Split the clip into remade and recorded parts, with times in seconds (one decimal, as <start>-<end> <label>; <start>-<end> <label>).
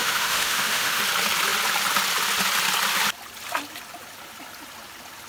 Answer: 0.0-1.0 remade; 1.0-5.3 recorded